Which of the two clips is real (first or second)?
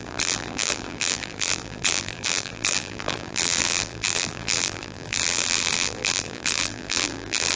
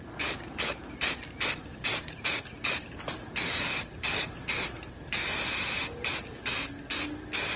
second